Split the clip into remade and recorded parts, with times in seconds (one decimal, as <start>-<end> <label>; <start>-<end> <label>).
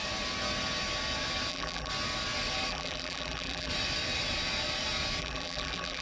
0.0-1.5 recorded; 1.5-1.9 remade; 1.9-2.7 recorded; 2.7-3.7 remade; 3.7-5.2 recorded; 5.2-6.0 remade